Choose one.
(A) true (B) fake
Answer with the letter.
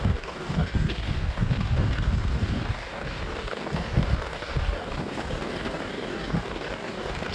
B